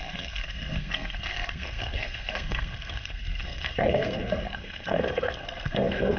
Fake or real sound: fake